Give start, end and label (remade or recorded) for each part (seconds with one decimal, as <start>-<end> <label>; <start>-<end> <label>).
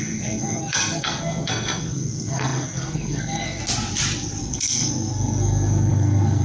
0.0-3.6 remade; 3.6-4.4 recorded; 4.4-6.4 remade